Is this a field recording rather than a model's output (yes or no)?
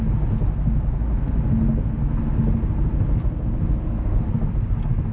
yes